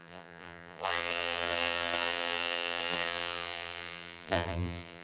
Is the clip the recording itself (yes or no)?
no